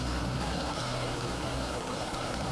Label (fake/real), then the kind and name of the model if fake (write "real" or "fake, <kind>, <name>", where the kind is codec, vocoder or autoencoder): fake, codec, SNAC